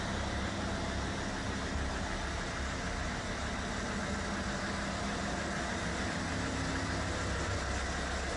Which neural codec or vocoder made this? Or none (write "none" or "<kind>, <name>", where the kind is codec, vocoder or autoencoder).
none